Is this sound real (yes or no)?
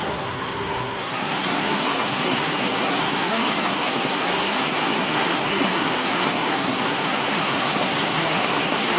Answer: no